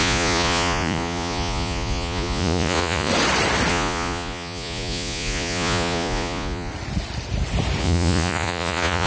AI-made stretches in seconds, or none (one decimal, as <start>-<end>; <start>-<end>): 0.0-3.1; 3.7-6.7; 7.8-9.1